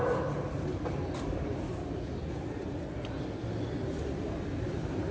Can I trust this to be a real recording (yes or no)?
yes